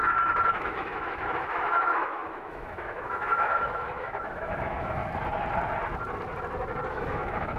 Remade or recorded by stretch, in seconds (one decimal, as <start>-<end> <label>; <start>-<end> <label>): 0.0-0.5 recorded; 0.5-5.0 remade; 5.0-6.9 recorded; 6.9-7.6 remade